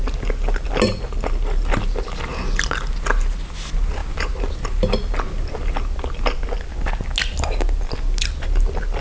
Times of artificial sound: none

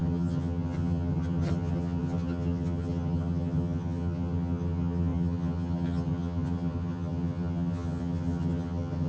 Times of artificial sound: 0.0-9.1 (vocoder, HiFi-GAN)

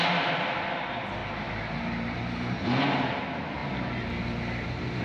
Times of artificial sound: none

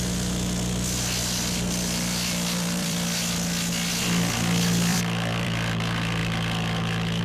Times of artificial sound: 1.2-3.3 (vocoder, BigVGAN v2); 4.9-5.7

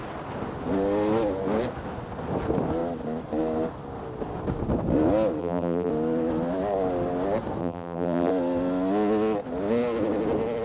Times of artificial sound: 5.4-5.9 (vocoder, BigVGAN v2); 7.6-8.3

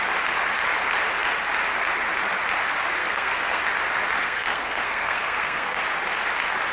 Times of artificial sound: 3.0-3.6 (codec, SNAC); 4.2-5.8

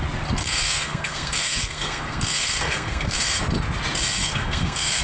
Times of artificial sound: 0.4-3.4 (codec, SNAC); 4.2-5.0